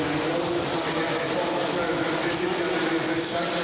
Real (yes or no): yes